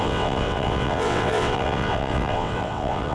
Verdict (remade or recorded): remade